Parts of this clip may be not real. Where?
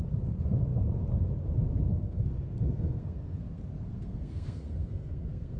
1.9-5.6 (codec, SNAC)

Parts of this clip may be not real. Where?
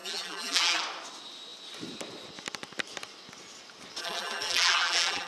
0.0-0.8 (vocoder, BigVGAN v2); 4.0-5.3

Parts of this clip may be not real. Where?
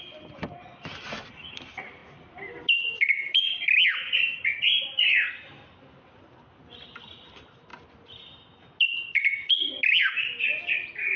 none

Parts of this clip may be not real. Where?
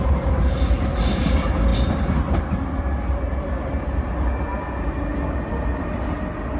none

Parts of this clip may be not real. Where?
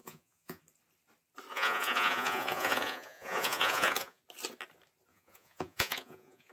0.0-0.6 (vocoder, Vocos); 1.5-4.2; 5.1-6.5